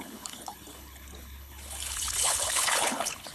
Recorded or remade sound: remade